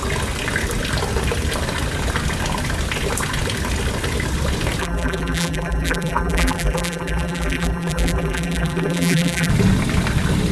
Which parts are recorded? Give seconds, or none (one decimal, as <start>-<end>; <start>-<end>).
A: 0.0-4.8; 9.5-10.5